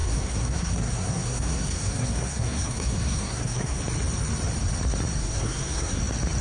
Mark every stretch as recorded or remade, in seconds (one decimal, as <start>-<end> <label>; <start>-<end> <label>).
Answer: 0.0-3.8 remade; 3.8-5.2 recorded; 5.2-6.0 remade; 6.0-6.4 recorded